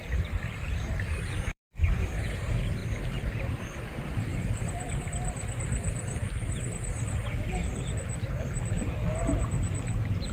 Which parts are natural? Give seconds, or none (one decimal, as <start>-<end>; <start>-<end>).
2.8-3.3; 4.3-7.9